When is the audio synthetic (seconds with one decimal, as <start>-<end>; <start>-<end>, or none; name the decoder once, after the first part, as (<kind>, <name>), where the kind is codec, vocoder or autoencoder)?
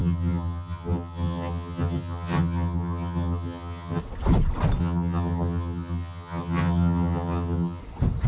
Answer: 0.0-4.0 (vocoder, HiFi-GAN); 4.8-7.8